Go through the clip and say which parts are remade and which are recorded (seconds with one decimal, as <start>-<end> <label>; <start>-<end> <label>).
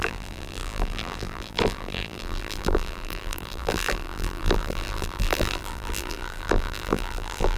0.0-7.6 remade